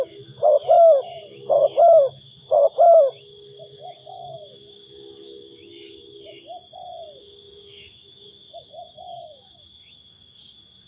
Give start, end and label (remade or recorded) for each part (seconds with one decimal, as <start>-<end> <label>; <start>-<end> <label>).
0.0-6.5 remade; 6.5-7.2 recorded; 7.2-10.9 remade